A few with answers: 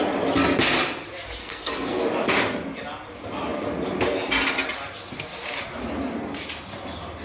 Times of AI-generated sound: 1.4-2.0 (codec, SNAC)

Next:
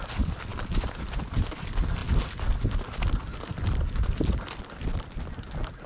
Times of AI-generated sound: none

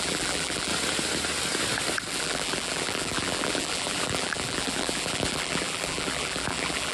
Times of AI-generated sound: 0.0-0.7 (vocoder, BigVGAN v2); 2.1-6.9